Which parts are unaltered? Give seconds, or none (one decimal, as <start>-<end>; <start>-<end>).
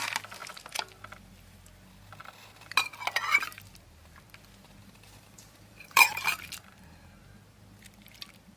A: 0.0-4.8; 6.4-8.6